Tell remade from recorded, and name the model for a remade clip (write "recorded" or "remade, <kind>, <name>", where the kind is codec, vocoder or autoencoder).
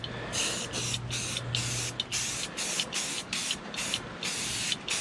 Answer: recorded